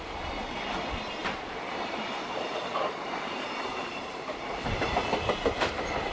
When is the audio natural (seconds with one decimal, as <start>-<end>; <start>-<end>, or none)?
0.0-1.2; 4.9-6.1